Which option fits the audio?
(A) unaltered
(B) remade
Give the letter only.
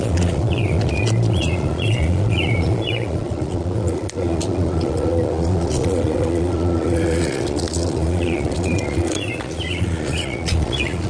B